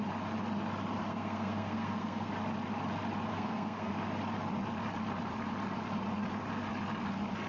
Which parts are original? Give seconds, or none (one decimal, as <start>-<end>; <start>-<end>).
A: 0.0-1.0; 2.3-3.3; 3.9-7.5